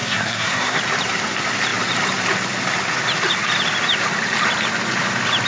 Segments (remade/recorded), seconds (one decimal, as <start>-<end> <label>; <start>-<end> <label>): 0.0-0.8 remade; 0.8-5.5 recorded